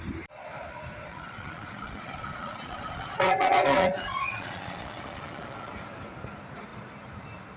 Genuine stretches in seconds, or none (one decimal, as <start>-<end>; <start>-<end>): 0.0-1.1; 5.7-7.6